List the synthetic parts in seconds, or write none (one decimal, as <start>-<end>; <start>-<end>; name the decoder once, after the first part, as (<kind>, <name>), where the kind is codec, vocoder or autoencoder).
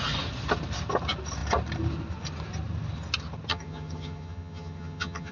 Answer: 3.5-5.3 (vocoder, HiFi-GAN)